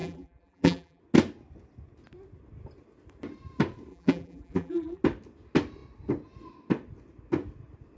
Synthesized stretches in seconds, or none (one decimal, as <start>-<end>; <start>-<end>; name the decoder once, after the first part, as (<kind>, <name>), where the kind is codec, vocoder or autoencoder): 0.0-1.0 (vocoder, BigVGAN v2); 3.9-5.0